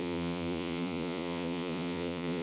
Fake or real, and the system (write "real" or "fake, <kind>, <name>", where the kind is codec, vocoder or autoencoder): fake, vocoder, Vocos